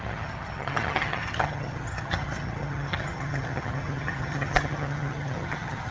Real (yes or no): no